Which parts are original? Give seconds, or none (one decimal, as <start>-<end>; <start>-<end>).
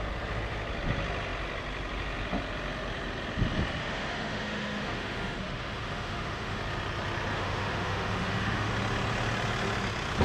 0.0-3.8; 6.6-7.3; 8.7-10.2